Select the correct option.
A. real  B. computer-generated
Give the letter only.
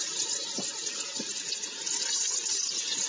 A